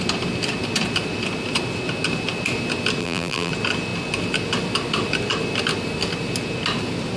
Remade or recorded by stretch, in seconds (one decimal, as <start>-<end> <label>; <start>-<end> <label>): 0.0-3.0 recorded; 3.0-3.5 remade; 3.5-7.2 recorded